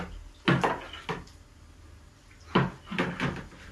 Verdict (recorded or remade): recorded